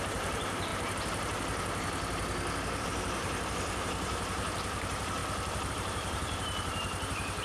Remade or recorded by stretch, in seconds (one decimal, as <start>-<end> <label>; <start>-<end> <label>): 0.0-0.7 remade; 0.7-2.8 recorded; 2.8-5.2 remade; 5.2-5.7 recorded; 5.7-7.4 remade